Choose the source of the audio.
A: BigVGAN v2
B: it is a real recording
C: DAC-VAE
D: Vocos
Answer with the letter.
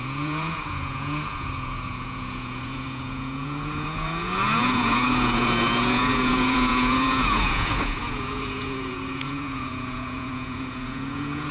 D